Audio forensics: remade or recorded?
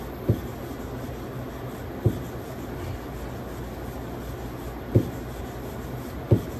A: recorded